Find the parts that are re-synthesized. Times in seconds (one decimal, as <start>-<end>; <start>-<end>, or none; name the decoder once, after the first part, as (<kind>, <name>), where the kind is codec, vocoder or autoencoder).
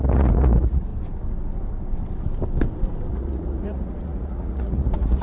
0.0-0.9 (vocoder, Vocos); 3.1-5.2